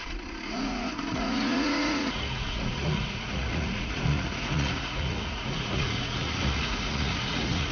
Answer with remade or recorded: remade